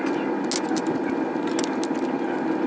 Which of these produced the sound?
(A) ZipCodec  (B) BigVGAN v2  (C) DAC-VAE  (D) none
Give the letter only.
D